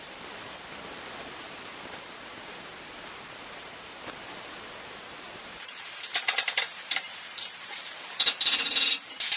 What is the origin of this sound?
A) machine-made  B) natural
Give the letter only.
A